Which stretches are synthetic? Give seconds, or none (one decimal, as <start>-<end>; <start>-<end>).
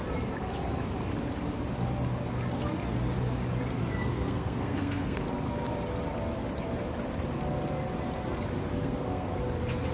3.8-5.2; 8.7-9.4